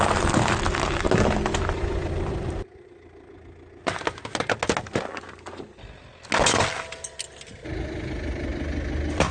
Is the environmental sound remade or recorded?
recorded